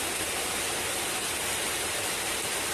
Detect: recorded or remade recorded